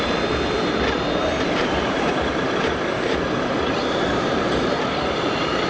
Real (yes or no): no